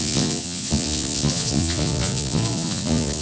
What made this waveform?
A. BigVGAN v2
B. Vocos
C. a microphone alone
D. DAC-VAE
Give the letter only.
B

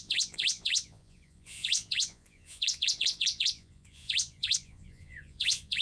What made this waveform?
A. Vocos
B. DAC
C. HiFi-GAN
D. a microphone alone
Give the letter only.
A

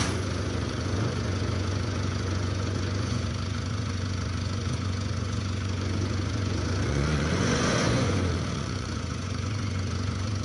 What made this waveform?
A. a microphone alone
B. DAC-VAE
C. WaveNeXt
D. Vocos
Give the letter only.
D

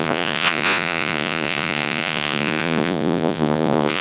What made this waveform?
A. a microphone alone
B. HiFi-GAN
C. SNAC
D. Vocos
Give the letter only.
D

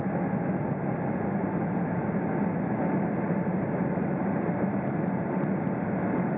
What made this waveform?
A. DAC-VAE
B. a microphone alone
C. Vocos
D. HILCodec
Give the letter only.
B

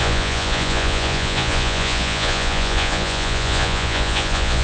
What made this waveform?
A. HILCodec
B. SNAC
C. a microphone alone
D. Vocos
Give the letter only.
D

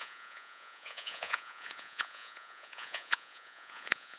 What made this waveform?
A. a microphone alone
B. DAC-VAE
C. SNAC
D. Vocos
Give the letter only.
D